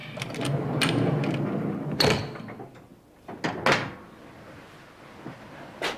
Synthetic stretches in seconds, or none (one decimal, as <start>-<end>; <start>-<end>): none